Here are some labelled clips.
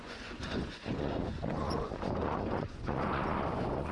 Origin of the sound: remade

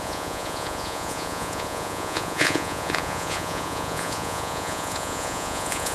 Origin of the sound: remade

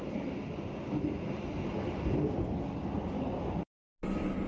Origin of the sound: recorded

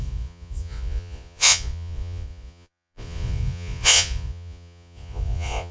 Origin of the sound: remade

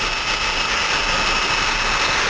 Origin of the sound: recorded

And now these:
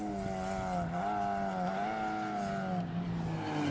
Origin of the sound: recorded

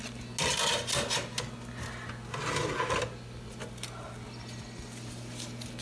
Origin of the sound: recorded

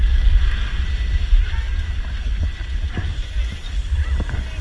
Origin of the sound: recorded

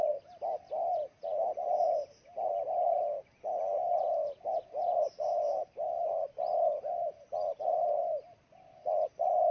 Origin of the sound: recorded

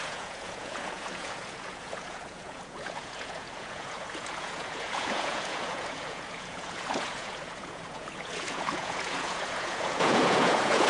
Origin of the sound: remade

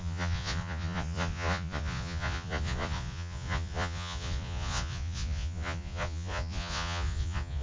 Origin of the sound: remade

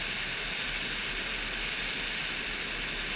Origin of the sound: recorded